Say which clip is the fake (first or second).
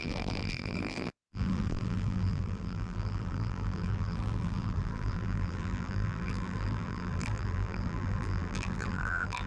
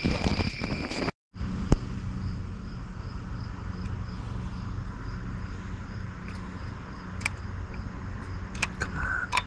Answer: first